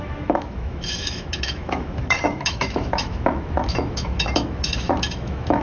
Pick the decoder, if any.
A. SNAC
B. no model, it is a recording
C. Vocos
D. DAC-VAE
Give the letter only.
D